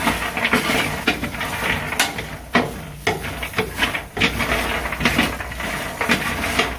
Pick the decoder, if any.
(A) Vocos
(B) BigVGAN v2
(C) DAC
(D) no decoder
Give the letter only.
D